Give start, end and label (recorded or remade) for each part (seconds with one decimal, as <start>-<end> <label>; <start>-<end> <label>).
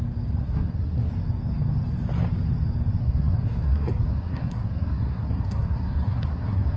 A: 0.0-0.4 recorded; 0.4-1.1 remade; 1.1-3.0 recorded; 3.0-6.8 remade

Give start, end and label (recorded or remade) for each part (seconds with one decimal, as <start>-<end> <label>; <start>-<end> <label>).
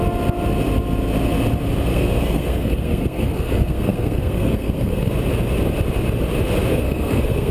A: 0.0-1.9 recorded; 1.9-5.1 remade; 5.1-6.7 recorded; 6.7-7.5 remade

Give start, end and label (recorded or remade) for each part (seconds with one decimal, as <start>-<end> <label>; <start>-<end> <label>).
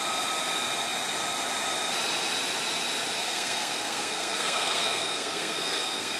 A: 0.0-3.2 recorded; 3.2-6.2 remade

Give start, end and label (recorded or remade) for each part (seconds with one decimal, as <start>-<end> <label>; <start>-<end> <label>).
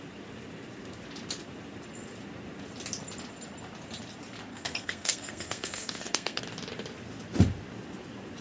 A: 0.0-4.5 recorded; 4.5-6.4 remade; 6.4-8.4 recorded